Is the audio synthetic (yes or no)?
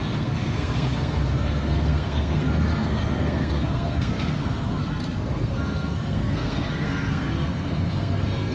yes